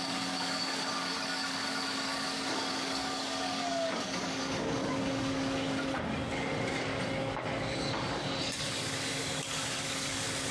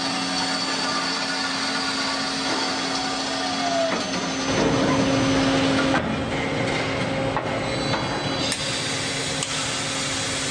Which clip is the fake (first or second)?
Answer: first